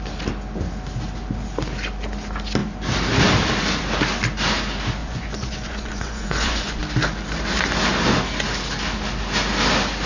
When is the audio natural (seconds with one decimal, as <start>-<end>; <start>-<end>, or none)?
0.0-5.0; 6.8-10.1